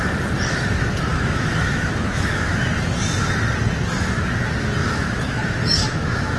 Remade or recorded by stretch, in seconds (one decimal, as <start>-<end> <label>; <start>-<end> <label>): 0.0-1.1 recorded; 1.1-2.7 remade; 2.7-4.8 recorded; 4.8-6.4 remade